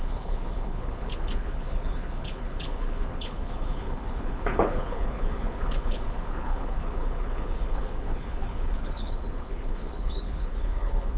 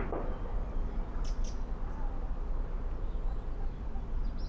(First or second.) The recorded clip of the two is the second